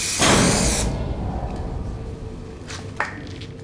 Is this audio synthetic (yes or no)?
no